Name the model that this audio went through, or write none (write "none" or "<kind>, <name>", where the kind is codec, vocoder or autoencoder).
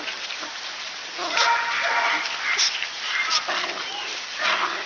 none